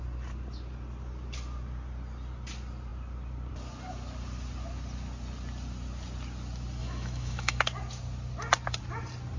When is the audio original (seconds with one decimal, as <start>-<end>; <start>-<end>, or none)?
0.0-6.8; 7.6-9.4